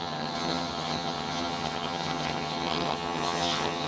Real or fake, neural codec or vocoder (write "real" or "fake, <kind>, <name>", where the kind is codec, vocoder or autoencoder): fake, vocoder, HiFi-GAN